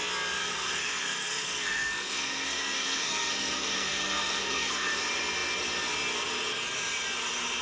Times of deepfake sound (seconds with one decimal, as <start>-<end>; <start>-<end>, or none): 0.4-5.0